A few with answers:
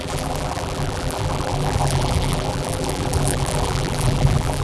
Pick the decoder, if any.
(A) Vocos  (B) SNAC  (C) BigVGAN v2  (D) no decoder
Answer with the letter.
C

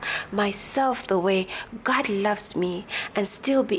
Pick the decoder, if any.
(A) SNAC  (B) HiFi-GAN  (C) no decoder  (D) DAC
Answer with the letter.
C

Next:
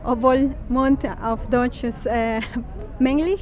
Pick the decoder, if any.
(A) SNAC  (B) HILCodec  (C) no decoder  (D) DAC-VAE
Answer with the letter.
C